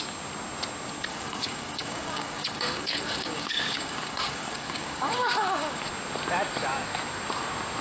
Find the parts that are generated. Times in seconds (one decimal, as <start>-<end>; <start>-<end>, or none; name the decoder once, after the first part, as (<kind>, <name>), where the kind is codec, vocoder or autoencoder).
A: 1.1-5.8 (codec, DAC)